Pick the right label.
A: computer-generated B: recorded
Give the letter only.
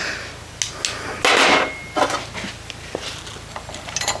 B